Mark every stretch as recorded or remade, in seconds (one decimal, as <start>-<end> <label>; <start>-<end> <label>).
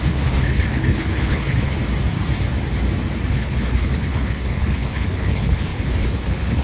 0.0-1.8 remade; 1.8-3.3 recorded; 3.3-6.6 remade